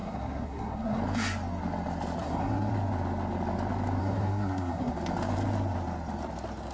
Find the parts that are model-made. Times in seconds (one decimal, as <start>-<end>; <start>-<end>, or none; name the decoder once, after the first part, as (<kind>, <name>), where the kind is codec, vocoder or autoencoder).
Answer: 0.0-1.0 (codec, SNAC); 2.2-2.7; 4.0-4.9